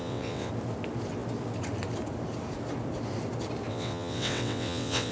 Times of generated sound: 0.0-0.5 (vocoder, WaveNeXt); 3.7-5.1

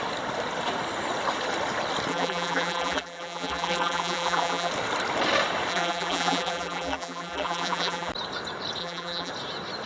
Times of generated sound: 2.1-4.7 (vocoder, BigVGAN v2); 5.7-8.1; 8.8-9.3

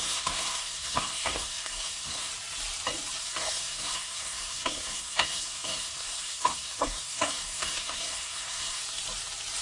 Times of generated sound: 0.0-2.3 (codec, SNAC); 3.2-8.8

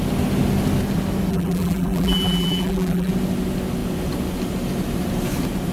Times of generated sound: 1.3-3.1 (vocoder, BigVGAN v2)

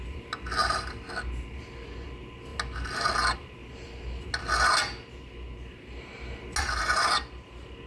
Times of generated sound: 0.6-1.1 (vocoder, BigVGAN v2)